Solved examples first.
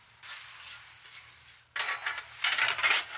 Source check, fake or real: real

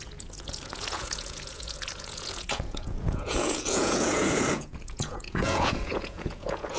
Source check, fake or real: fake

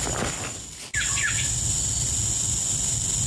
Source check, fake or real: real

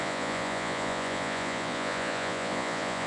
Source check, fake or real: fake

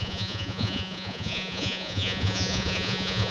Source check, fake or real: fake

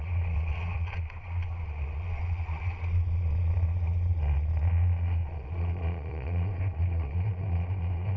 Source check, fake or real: fake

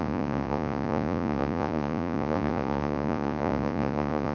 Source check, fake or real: fake